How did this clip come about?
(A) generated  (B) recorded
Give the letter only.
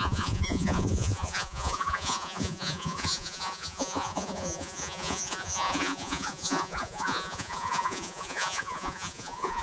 A